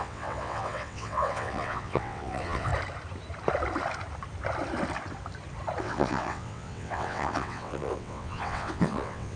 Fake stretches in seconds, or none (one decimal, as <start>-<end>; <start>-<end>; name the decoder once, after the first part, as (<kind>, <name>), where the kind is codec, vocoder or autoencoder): 0.0-2.7 (vocoder, WaveNeXt); 5.8-9.4

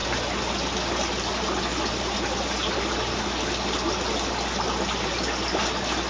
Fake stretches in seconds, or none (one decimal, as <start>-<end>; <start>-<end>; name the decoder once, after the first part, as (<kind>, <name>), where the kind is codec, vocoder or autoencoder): none